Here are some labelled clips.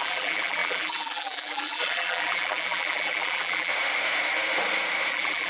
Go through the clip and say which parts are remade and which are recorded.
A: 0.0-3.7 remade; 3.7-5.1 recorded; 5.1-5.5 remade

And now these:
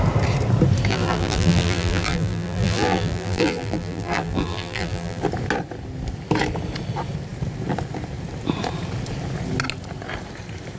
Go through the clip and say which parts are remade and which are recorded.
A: 0.0-0.9 recorded; 0.9-5.2 remade; 5.2-10.8 recorded